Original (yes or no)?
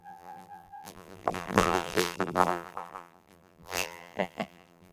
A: no